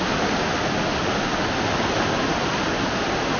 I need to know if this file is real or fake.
real